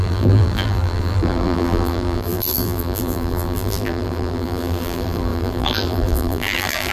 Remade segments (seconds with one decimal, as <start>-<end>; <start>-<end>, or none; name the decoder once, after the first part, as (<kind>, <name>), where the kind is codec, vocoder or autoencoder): 0.0-6.9 (vocoder, BigVGAN v2)